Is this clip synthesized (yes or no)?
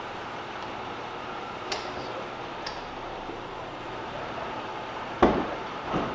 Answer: yes